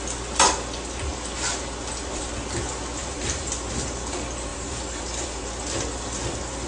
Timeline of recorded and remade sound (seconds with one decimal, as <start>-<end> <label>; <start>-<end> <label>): 0.0-3.0 recorded; 3.0-3.5 remade; 3.5-4.5 recorded; 4.5-5.5 remade; 5.5-6.7 recorded